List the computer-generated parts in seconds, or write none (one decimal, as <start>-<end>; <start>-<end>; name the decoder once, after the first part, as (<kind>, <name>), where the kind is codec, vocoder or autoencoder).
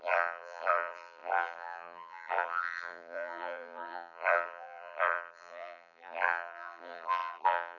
0.0-7.8 (vocoder, BigVGAN v2)